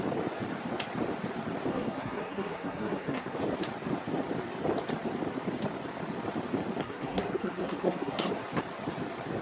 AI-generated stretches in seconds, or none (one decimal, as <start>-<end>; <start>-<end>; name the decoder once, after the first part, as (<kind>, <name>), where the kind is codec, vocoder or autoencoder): 1.7-3.4 (codec, SNAC); 6.8-8.3

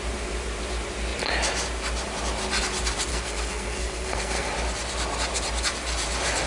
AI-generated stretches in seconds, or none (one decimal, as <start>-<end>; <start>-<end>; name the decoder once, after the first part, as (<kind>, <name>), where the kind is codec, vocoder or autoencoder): 3.1-4.5 (codec, SNAC)

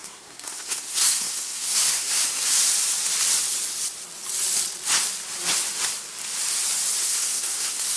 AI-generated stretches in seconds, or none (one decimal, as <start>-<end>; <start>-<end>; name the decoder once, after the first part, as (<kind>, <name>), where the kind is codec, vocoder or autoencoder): 0.0-2.2 (codec, SNAC); 7.0-8.0

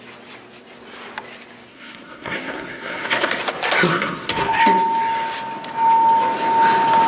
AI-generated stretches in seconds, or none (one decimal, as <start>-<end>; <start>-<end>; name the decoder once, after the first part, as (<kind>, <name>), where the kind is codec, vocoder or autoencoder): 1.7-3.4 (codec, SNAC); 3.9-4.6

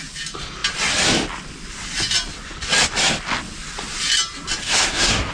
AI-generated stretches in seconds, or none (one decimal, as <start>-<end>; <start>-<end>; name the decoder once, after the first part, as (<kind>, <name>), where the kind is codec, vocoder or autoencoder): 4.6-5.3 (codec, SNAC)

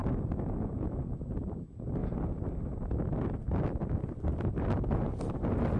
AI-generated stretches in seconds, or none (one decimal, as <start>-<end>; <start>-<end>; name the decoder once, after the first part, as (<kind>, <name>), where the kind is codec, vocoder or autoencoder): none

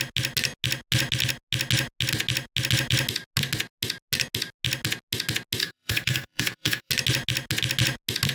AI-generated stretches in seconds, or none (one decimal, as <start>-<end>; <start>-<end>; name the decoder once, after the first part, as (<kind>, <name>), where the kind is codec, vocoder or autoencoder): 5.6-6.9 (codec, SNAC)

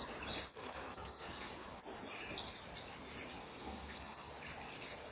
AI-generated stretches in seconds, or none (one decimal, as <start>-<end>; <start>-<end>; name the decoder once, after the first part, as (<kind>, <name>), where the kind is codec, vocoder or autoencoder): 0.5-1.5 (codec, SNAC); 3.4-4.3